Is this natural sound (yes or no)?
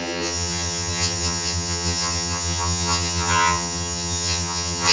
no